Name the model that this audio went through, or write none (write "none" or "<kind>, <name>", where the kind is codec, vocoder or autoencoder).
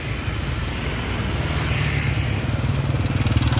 none